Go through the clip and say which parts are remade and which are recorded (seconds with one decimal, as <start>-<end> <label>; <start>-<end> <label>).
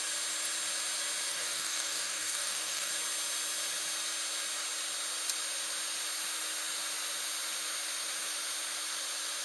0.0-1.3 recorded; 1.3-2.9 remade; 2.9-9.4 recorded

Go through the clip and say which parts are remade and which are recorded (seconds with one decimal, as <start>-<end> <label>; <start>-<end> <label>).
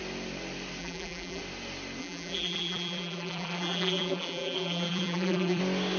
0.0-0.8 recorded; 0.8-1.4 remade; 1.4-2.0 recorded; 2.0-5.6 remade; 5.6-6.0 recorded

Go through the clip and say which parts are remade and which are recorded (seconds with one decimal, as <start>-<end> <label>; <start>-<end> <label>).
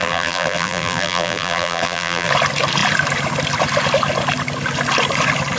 0.0-2.3 remade; 2.3-5.6 recorded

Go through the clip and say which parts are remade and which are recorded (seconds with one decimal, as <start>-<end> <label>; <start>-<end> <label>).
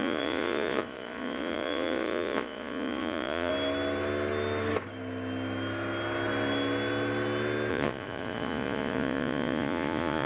0.0-3.5 remade; 3.5-7.7 recorded; 7.7-10.3 remade